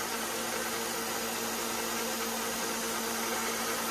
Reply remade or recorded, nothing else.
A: recorded